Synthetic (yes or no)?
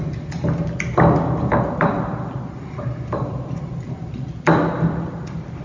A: no